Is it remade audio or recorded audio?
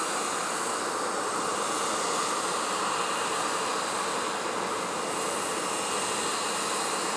recorded